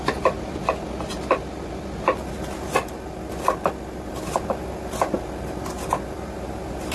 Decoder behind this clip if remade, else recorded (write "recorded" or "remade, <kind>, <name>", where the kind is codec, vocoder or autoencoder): recorded